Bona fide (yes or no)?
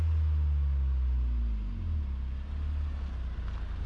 yes